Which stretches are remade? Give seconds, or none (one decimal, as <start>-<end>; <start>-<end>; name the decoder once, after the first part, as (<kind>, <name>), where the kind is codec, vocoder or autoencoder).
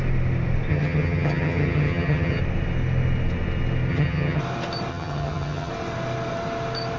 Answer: 0.7-2.4 (vocoder, HiFi-GAN); 3.9-4.4; 4.9-5.7